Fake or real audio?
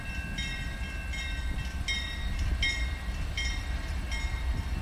real